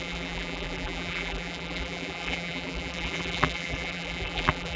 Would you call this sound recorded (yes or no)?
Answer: no